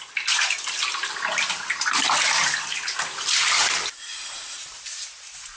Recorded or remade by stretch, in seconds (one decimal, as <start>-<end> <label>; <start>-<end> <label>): 0.0-5.6 recorded